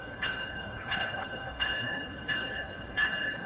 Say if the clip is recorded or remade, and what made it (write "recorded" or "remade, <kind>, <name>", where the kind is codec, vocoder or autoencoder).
remade, codec, HILCodec